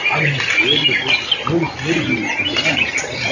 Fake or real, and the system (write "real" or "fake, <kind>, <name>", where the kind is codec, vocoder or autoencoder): real